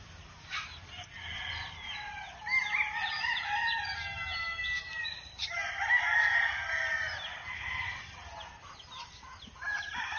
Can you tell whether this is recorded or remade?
recorded